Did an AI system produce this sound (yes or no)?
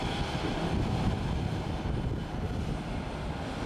no